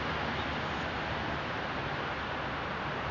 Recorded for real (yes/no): yes